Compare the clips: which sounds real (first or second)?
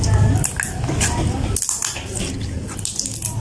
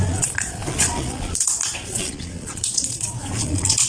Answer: first